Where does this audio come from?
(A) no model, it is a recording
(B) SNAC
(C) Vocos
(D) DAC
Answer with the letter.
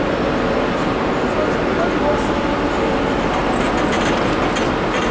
A